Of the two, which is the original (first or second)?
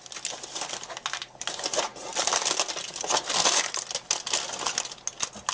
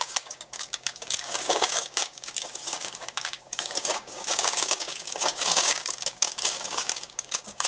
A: first